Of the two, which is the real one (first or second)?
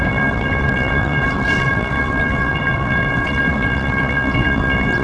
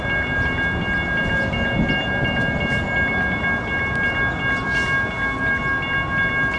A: second